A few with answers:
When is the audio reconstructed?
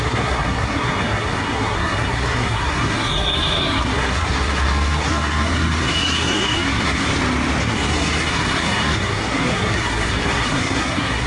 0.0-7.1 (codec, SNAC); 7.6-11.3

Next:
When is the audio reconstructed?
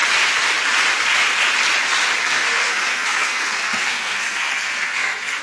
2.2-5.4 (codec, SNAC)